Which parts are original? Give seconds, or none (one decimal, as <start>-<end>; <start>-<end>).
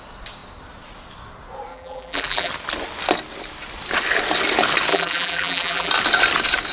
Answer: 0.0-1.7; 2.5-4.9; 5.9-6.7